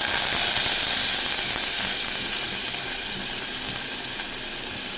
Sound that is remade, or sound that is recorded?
recorded